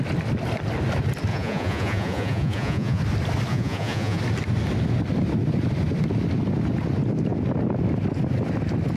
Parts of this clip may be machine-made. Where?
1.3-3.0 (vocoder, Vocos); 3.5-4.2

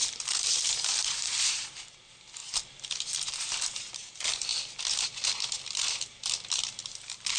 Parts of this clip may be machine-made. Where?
none

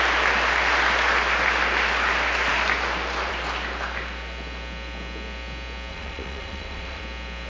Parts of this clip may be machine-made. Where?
5.9-7.0 (vocoder, Vocos)

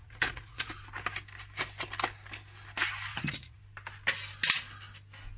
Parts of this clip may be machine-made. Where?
0.0-0.7 (vocoder, Vocos); 3.1-3.6

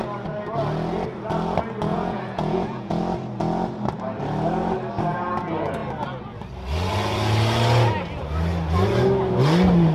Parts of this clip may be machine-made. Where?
1.9-3.0 (vocoder, Vocos)

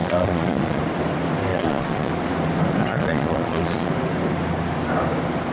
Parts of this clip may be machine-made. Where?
0.0-0.8 (vocoder, Vocos); 1.5-2.1; 2.8-3.9

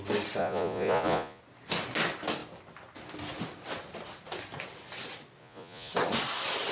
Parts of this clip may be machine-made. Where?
0.4-1.4 (vocoder, Vocos); 5.4-5.9